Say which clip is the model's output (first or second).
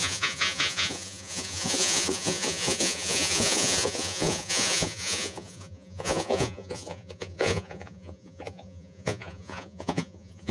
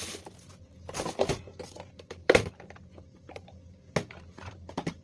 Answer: first